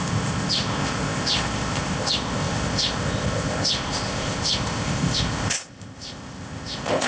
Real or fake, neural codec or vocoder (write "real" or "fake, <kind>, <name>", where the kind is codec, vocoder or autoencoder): fake, codec, ZipCodec